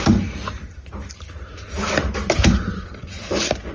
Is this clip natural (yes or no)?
yes